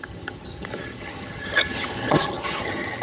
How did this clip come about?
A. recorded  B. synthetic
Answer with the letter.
B